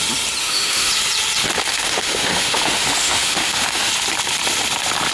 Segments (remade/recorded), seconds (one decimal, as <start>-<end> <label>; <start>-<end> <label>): 0.0-0.4 recorded; 0.4-0.9 remade; 0.9-1.7 recorded; 1.7-3.9 remade; 3.9-5.1 recorded